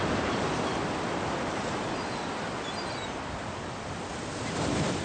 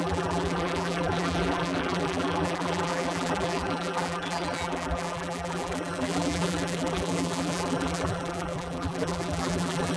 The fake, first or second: second